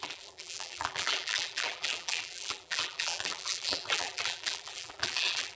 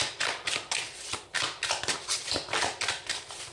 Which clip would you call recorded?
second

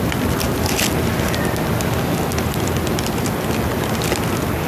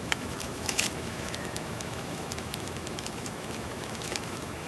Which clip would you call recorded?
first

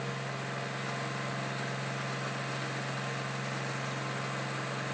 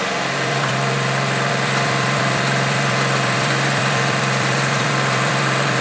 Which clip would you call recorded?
first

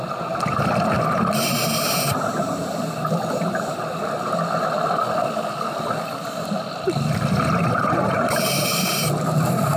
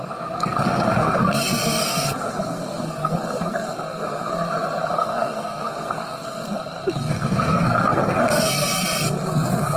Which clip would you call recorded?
first